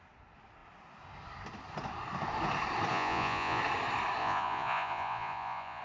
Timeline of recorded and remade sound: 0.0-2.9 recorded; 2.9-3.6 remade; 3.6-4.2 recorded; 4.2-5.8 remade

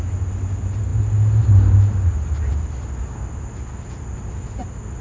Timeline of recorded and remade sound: 0.0-5.0 recorded

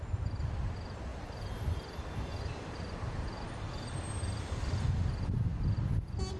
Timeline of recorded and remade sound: 0.0-6.4 recorded

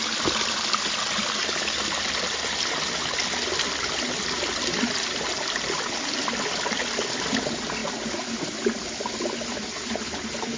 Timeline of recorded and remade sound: 0.0-10.6 recorded

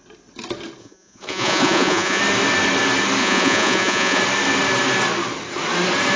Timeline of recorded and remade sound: 0.0-0.8 recorded; 0.8-2.2 remade; 2.2-3.2 recorded; 3.2-4.2 remade; 4.2-6.2 recorded

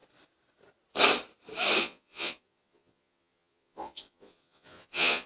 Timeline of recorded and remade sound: 0.0-1.8 recorded; 1.8-5.3 remade

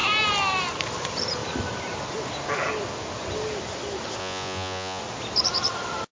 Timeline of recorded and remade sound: 0.0-4.2 recorded; 4.2-5.0 remade; 5.0-6.1 recorded

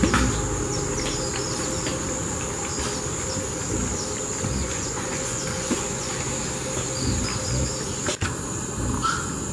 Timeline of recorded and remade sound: 0.0-4.6 recorded; 4.6-6.1 remade; 6.1-9.5 recorded